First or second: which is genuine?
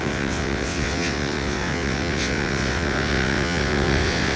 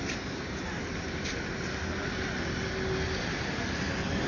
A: second